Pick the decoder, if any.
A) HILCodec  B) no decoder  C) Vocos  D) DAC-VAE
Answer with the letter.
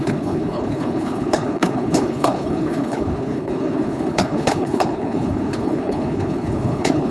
A